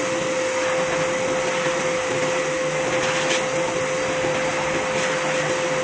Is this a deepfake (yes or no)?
no